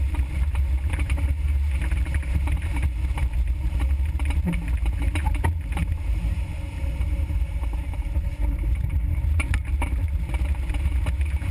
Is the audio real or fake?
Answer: fake